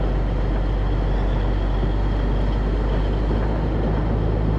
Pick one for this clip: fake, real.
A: real